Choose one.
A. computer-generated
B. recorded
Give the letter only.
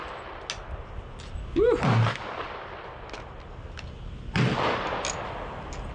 B